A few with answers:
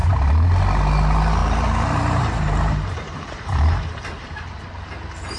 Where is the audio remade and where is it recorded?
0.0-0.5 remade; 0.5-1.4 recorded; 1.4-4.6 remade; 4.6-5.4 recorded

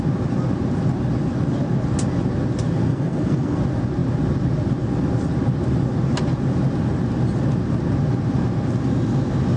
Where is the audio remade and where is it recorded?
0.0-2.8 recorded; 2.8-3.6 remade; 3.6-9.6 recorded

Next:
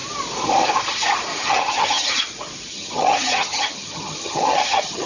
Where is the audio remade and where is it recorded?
0.0-1.3 recorded; 1.3-2.2 remade; 2.2-2.7 recorded; 2.7-5.1 remade

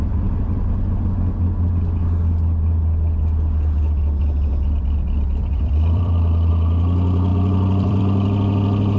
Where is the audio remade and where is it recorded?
0.0-4.5 recorded; 4.5-6.5 remade; 6.5-7.3 recorded; 7.3-8.0 remade; 8.0-9.0 recorded

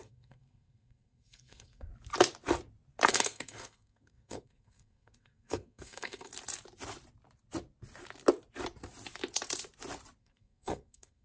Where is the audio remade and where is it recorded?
0.0-1.9 remade; 1.9-3.1 recorded; 3.1-6.3 remade; 6.3-10.2 recorded; 10.2-11.2 remade

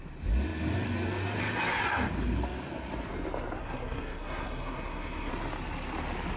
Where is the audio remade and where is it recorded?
0.0-3.6 recorded; 3.6-5.3 remade; 5.3-6.4 recorded

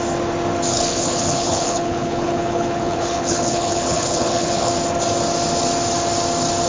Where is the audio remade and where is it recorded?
0.0-0.7 recorded; 0.7-4.7 remade; 4.7-6.7 recorded